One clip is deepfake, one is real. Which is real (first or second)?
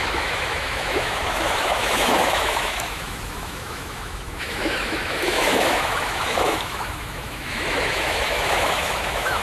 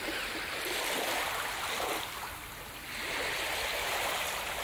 second